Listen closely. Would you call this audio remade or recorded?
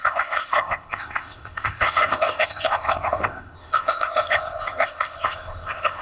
remade